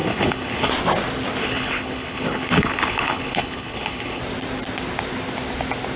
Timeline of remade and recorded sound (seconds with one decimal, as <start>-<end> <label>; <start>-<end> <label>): 0.0-0.7 remade; 0.7-1.4 recorded; 1.4-4.2 remade; 4.2-6.0 recorded